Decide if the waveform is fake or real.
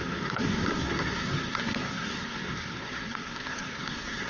fake